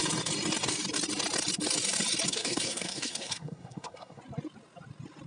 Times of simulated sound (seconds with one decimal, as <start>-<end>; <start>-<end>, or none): 2.3-4.2